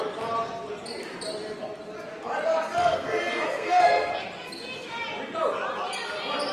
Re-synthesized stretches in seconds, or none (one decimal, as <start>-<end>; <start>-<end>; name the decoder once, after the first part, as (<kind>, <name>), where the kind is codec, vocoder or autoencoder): 2.8-4.1 (codec, SNAC)